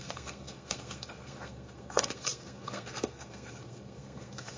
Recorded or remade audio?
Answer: remade